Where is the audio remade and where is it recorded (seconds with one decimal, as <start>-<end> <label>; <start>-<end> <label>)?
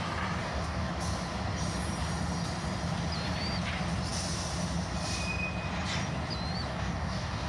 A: 0.0-0.4 recorded; 0.4-0.9 remade; 0.9-6.7 recorded; 6.7-7.5 remade